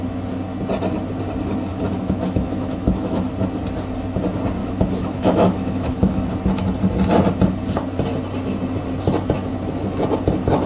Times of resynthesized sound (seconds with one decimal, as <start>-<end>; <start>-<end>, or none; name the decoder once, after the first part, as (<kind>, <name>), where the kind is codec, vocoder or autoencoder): 1.7-3.3 (autoencoder, DAC-VAE); 4.6-6.2

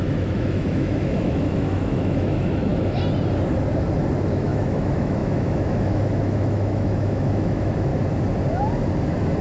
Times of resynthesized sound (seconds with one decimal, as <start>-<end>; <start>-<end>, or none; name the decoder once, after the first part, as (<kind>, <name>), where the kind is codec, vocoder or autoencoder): 0.0-2.7 (autoencoder, DAC-VAE); 4.3-7.9

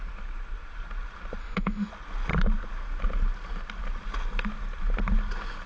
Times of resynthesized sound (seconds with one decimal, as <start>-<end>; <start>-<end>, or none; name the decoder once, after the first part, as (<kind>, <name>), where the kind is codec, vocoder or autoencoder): 1.4-1.9 (autoencoder, DAC-VAE)

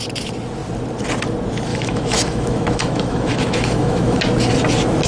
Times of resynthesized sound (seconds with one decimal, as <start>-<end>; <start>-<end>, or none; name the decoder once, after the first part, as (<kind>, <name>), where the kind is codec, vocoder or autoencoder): 1.7-4.2 (autoencoder, DAC-VAE)